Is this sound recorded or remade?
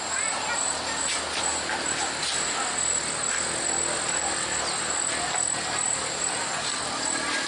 recorded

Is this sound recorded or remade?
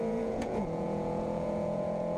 remade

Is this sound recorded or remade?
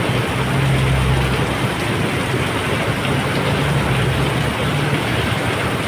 recorded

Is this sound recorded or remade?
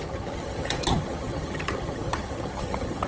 remade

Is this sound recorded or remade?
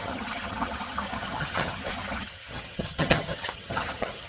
remade